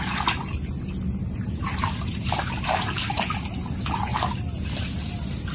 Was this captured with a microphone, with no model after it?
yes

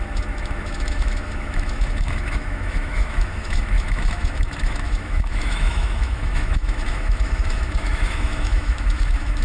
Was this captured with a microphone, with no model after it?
no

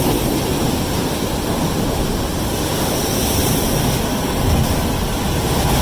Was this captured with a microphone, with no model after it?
yes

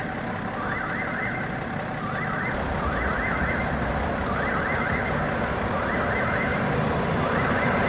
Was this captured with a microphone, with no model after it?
yes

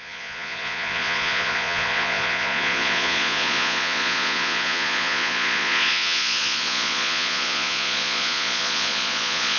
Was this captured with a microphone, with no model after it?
no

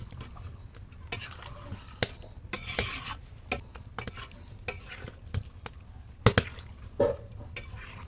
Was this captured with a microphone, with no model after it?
yes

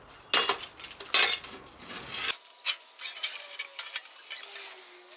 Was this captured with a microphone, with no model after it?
yes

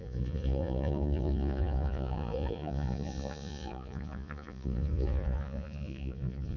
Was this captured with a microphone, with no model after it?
no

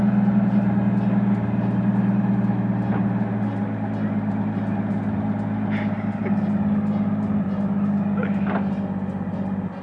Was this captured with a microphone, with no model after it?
yes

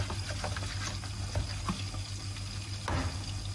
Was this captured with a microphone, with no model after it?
yes